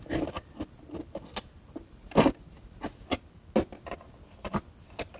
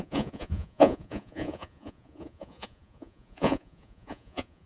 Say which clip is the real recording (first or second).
first